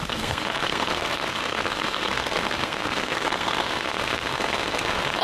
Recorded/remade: remade